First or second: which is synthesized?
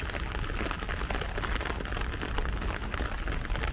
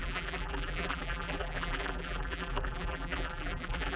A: second